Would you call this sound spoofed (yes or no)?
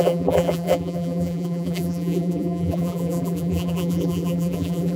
yes